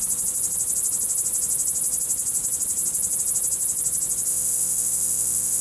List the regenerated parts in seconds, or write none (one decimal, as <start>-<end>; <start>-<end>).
4.3-5.6